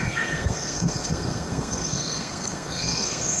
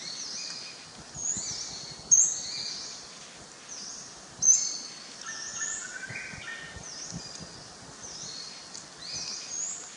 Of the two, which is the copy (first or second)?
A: first